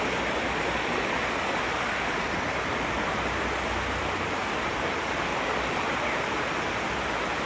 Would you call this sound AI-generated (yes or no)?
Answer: no